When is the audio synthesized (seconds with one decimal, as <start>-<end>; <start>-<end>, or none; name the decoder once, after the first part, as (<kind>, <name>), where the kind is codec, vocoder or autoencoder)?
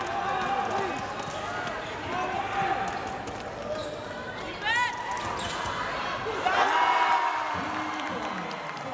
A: none